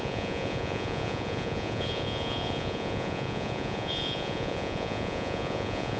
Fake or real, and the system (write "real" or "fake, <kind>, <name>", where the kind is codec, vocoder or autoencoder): fake, vocoder, Vocos